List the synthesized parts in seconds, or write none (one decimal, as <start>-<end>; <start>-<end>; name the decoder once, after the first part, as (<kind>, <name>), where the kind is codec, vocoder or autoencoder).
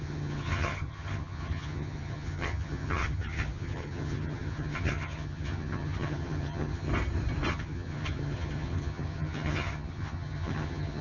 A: 0.0-6.9 (vocoder, HiFi-GAN); 7.5-11.0